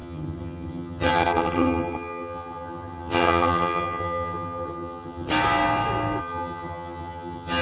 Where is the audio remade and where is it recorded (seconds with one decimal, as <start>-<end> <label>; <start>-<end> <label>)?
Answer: 0.0-5.3 remade; 5.3-6.2 recorded; 6.2-7.6 remade